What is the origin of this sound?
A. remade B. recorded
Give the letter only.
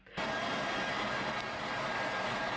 B